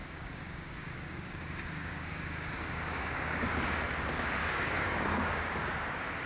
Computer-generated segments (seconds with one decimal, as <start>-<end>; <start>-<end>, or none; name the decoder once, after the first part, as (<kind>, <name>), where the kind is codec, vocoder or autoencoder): 0.0-3.8 (codec, DAC); 4.4-5.7